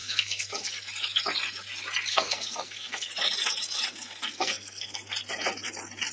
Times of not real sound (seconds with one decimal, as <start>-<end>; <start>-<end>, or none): 0.0-0.7; 2.1-3.1; 4.2-5.0